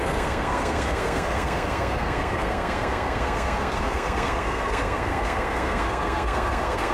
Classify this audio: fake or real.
fake